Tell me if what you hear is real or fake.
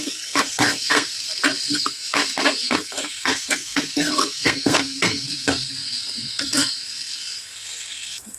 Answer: fake